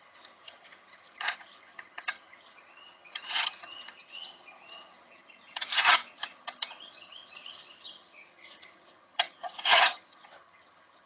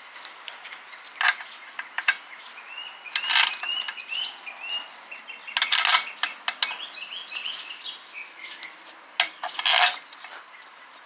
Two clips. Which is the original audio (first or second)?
second